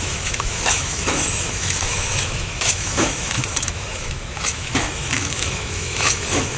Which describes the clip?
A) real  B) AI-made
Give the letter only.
B